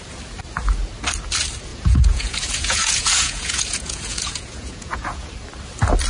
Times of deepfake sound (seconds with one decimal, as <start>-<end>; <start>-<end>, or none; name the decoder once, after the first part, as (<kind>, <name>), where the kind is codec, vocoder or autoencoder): 1.7-5.3 (vocoder, Vocos)